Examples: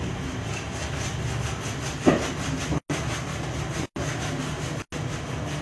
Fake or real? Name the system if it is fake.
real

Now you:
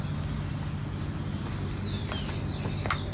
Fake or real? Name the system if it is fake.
real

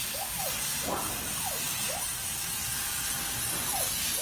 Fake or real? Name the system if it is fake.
real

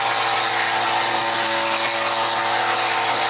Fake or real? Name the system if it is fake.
real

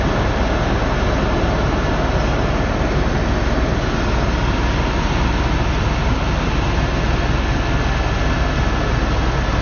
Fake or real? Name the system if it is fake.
real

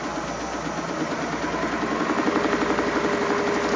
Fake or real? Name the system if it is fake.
real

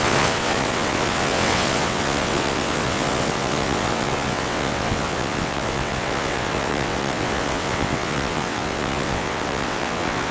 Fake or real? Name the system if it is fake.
fake, vocoder, WaveNeXt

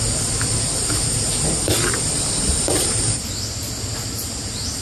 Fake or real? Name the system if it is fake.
real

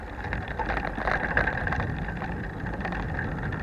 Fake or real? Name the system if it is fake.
real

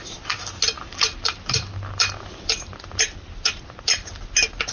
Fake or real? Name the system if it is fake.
real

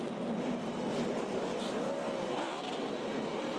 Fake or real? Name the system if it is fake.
real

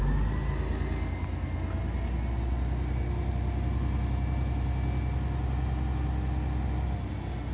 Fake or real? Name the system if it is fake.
real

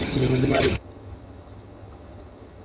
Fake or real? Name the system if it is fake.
fake, vocoder, HiFi-GAN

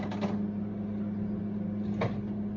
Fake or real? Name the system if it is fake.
real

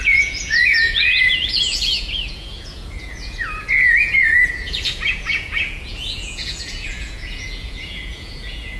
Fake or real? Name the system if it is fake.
fake, vocoder, Vocos